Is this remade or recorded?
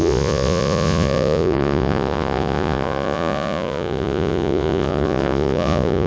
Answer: remade